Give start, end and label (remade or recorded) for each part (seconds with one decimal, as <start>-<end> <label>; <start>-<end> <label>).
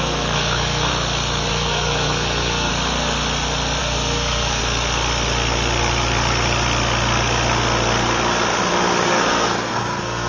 0.0-0.9 remade; 0.9-1.5 recorded; 1.5-2.7 remade; 2.7-3.8 recorded; 3.8-4.6 remade; 4.6-9.1 recorded; 9.1-10.3 remade